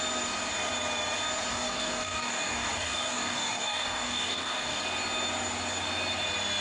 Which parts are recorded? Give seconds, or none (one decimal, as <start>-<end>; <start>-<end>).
0.0-1.5; 4.8-6.6